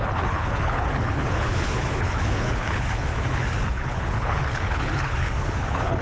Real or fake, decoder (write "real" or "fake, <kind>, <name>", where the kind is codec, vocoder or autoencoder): fake, codec, HILCodec